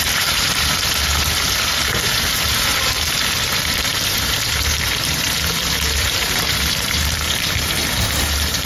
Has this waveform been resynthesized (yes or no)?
yes